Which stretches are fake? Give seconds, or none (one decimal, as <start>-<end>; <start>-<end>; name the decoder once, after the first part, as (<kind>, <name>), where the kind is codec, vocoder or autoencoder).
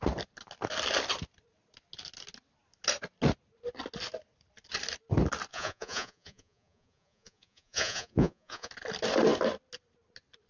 5.5-8.7 (vocoder, Vocos)